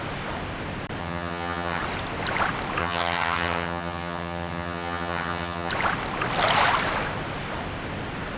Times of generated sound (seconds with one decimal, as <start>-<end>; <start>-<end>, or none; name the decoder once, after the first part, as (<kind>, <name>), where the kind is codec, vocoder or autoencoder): 1.0-1.8 (vocoder, HiFi-GAN); 2.8-5.7